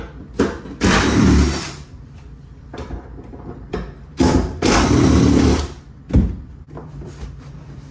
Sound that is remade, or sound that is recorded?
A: remade